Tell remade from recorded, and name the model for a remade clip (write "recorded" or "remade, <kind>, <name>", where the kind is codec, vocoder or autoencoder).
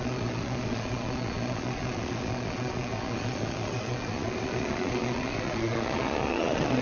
remade, vocoder, Vocos